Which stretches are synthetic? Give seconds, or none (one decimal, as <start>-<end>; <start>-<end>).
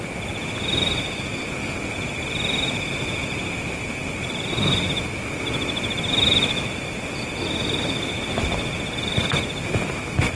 none